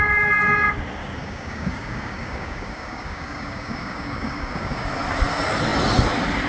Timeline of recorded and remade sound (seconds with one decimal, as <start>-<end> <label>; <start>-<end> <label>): 0.0-1.0 recorded; 1.0-4.9 remade; 4.9-6.5 recorded